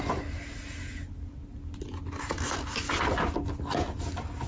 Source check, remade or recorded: recorded